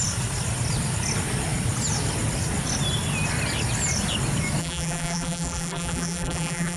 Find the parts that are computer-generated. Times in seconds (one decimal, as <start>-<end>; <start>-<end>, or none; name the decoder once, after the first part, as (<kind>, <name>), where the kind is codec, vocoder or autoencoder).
4.6-6.8 (vocoder, BigVGAN v2)